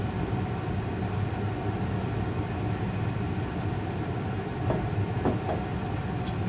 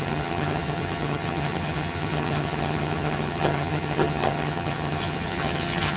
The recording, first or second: first